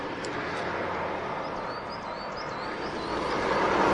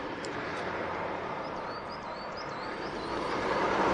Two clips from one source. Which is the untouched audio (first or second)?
first